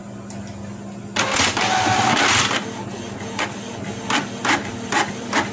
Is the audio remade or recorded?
recorded